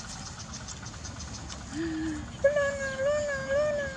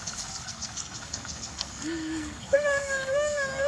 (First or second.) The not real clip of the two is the second